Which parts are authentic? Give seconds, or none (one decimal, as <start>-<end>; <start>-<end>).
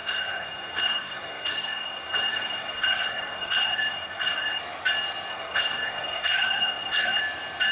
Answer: 4.6-5.3; 7.2-7.7